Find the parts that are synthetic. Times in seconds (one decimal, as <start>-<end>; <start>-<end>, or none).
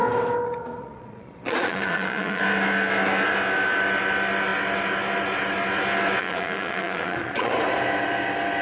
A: 0.8-2.4; 6.2-7.5